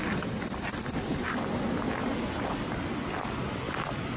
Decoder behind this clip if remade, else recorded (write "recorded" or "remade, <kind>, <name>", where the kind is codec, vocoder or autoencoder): recorded